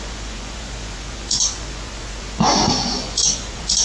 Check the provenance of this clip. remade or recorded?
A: remade